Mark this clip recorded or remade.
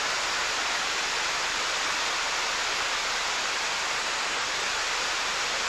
recorded